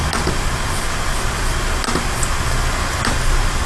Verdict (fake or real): real